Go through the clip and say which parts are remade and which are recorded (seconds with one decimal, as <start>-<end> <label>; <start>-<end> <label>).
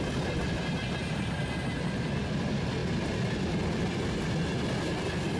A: 0.0-5.4 recorded